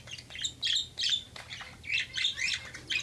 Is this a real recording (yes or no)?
yes